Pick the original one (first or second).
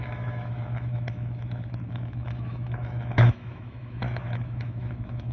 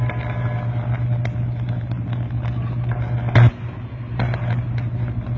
second